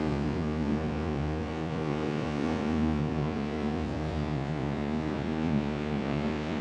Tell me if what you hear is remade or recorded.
remade